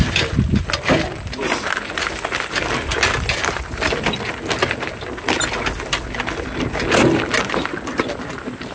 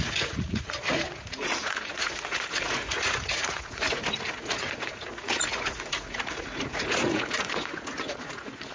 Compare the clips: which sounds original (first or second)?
first